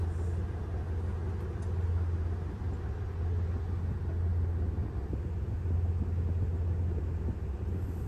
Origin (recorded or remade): recorded